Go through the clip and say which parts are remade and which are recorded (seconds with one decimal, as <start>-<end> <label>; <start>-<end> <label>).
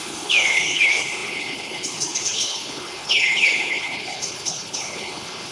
0.0-5.5 remade